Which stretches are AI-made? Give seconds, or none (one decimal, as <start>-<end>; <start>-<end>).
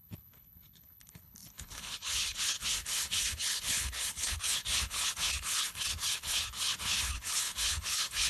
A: 0.0-8.3